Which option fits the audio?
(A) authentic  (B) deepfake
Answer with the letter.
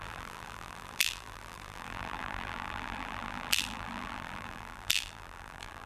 B